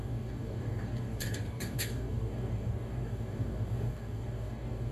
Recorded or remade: remade